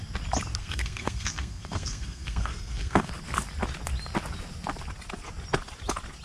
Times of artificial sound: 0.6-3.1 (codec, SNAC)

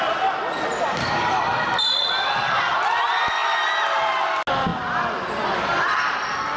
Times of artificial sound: none

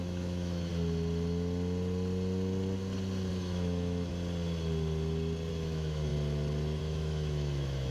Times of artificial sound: 0.0-0.7 (autoencoder, DAC-VAE); 3.3-4.1; 5.5-6.1; 6.8-7.9

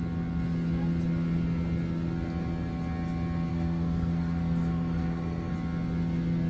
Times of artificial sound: 3.5-5.5 (codec, SNAC)

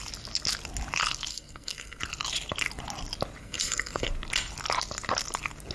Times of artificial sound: 1.3-2.0 (codec, SNAC); 3.4-4.1

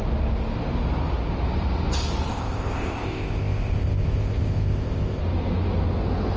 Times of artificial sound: 2.3-5.2 (codec, ZipCodec)

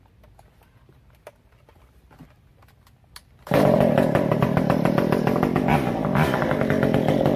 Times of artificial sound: none